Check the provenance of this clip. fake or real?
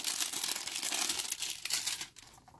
real